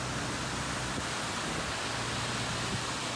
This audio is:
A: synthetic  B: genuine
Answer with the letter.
B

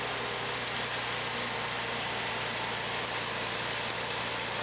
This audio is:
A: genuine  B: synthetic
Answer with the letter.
A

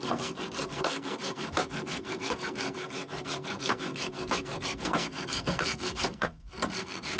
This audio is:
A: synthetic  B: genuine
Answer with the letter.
A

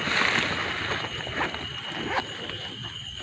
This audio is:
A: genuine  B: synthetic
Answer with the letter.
A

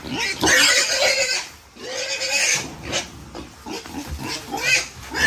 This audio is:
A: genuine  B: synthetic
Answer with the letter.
A